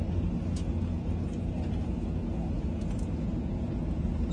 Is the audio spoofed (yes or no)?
no